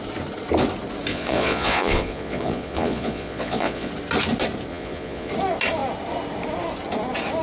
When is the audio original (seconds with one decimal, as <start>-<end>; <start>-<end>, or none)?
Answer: 0.0-1.1; 3.9-4.7; 5.3-7.4